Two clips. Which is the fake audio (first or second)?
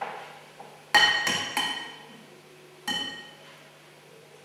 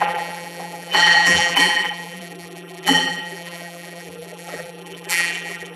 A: second